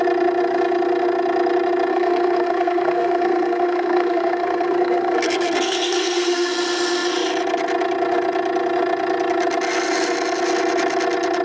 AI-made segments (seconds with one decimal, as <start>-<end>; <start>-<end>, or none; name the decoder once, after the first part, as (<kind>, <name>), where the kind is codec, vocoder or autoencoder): 1.9-6.5 (codec, SNAC)